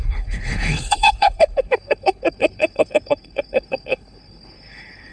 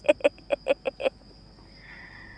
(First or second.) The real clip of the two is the second